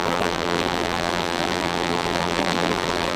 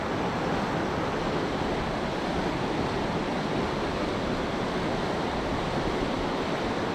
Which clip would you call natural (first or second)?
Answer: second